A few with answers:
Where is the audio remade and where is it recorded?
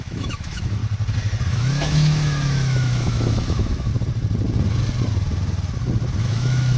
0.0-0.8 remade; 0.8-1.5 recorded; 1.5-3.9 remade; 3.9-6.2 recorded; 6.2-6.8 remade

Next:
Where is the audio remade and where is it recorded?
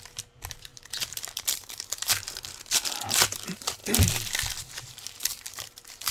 0.0-3.8 remade; 3.8-4.6 recorded; 4.6-6.1 remade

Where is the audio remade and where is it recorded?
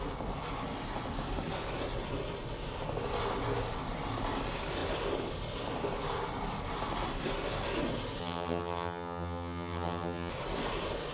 0.0-8.2 recorded; 8.2-10.3 remade; 10.3-11.1 recorded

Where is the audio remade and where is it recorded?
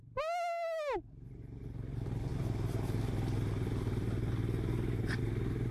0.0-5.7 recorded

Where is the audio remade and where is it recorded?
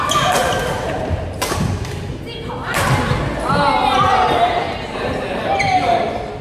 0.0-0.4 recorded; 0.4-2.0 remade; 2.0-3.8 recorded; 3.8-4.3 remade; 4.3-6.4 recorded